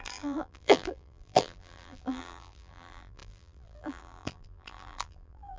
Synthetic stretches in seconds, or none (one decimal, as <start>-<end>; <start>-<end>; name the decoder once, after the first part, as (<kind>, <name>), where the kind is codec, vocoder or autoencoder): 0.0-5.6 (vocoder, BigVGAN v2)